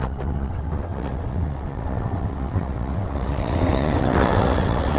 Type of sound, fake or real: fake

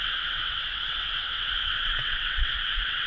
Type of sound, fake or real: fake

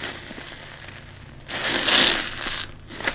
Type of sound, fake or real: real